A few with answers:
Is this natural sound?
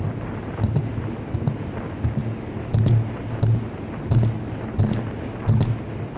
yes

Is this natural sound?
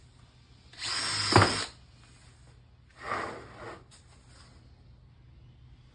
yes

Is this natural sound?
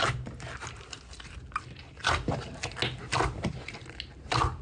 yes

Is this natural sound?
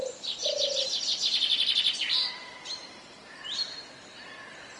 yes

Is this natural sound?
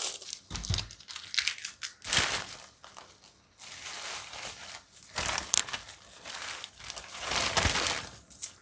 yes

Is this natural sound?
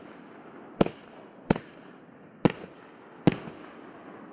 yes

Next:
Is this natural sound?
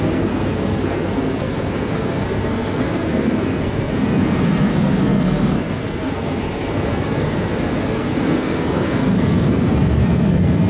no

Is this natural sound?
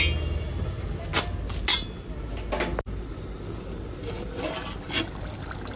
yes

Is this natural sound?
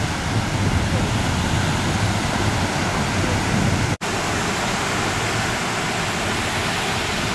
yes